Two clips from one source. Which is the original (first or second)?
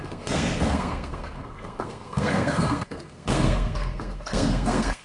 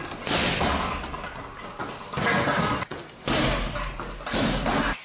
second